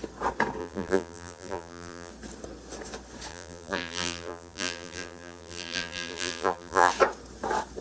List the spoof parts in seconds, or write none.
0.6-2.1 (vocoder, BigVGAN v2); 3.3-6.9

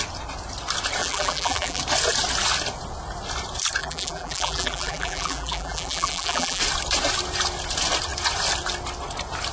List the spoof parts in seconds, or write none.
1.0-1.8 (vocoder, BigVGAN v2); 3.8-6.6

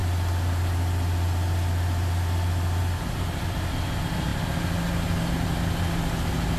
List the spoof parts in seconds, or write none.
none

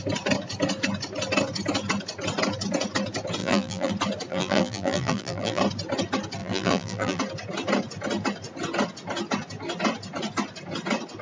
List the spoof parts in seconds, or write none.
3.4-3.9 (vocoder, BigVGAN v2); 4.3-5.6; 6.4-7.2

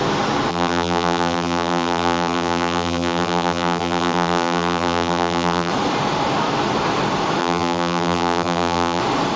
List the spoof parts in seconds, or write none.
0.5-5.7 (vocoder, BigVGAN v2); 7.4-9.0